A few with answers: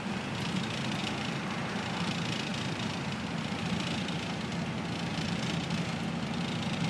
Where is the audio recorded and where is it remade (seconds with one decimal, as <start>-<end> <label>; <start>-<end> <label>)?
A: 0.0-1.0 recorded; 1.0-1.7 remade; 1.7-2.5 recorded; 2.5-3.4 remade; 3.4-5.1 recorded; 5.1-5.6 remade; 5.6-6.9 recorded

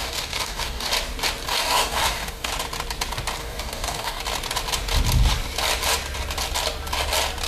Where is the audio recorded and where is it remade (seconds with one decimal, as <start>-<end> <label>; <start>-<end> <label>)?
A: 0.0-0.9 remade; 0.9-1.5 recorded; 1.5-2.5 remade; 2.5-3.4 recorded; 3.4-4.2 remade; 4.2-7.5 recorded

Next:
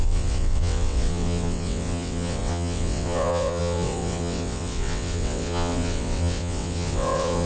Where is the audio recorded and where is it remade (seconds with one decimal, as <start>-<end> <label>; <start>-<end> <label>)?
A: 0.0-7.5 remade